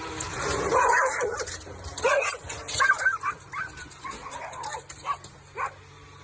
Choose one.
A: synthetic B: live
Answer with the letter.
B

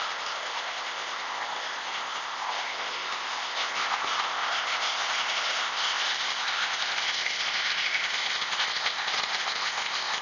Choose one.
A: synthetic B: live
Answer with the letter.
A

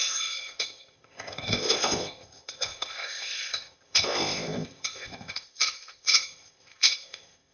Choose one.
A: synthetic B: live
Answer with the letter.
A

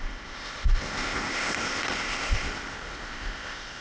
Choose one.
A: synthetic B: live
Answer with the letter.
A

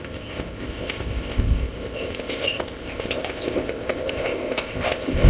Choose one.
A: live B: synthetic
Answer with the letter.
B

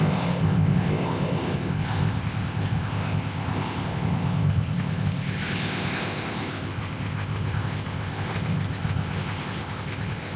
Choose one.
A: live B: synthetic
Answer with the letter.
B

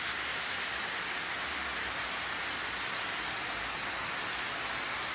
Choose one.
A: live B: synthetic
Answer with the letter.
A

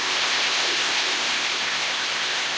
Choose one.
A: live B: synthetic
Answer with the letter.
B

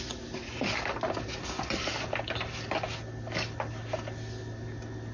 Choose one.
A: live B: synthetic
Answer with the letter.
A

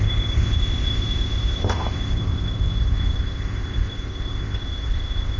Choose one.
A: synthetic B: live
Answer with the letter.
A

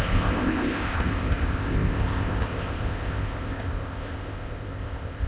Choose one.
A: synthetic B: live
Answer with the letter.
A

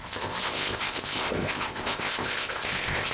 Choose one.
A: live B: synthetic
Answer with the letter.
B